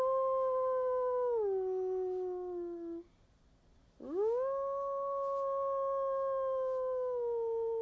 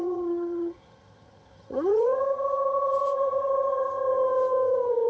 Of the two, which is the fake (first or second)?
second